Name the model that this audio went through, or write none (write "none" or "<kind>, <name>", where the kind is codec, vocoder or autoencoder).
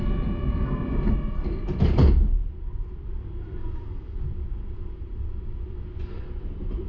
none